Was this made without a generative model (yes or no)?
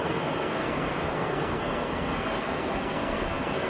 no